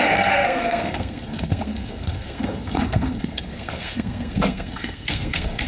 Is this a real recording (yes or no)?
no